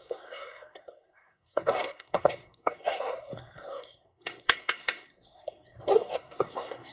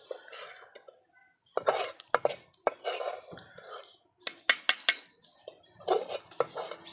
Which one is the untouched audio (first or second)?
second